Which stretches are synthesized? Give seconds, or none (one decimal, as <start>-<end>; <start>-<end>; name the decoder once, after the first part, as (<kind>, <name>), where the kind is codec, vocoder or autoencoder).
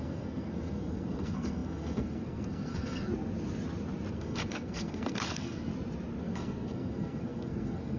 0.0-3.1 (codec, SNAC); 4.1-5.7; 6.2-8.0